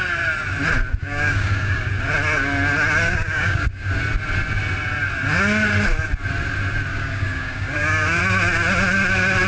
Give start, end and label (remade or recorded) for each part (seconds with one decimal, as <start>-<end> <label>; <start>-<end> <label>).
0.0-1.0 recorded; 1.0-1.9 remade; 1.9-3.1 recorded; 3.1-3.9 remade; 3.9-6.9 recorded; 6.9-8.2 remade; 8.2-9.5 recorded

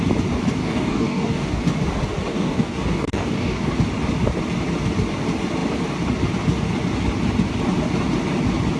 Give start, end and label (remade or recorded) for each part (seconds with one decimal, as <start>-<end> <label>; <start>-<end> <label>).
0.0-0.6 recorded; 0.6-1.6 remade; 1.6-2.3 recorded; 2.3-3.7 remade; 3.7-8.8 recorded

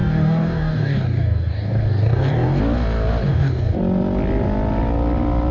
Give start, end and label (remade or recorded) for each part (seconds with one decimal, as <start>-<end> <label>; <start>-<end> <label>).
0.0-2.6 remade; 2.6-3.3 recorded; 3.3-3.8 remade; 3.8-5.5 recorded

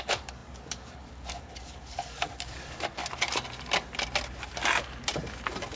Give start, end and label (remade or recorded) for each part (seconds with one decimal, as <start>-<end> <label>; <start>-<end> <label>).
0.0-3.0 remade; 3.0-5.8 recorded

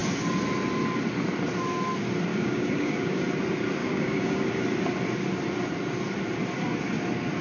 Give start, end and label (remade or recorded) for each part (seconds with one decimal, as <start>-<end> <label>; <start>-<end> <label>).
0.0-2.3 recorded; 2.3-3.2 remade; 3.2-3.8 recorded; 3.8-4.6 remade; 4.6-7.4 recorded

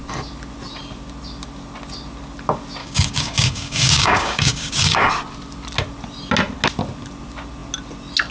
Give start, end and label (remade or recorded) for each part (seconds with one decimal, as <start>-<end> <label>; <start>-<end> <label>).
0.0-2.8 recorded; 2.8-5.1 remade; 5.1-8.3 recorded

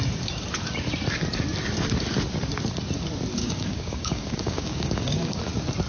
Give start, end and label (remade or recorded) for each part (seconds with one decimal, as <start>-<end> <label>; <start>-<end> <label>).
0.0-3.4 recorded; 3.4-5.4 remade; 5.4-5.9 recorded

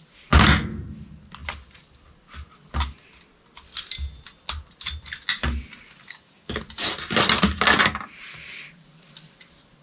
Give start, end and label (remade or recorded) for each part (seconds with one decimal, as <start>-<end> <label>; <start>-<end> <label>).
0.0-6.0 recorded; 6.0-6.6 remade; 6.6-9.8 recorded